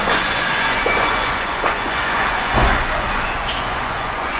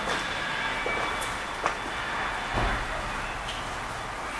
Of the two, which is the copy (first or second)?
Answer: first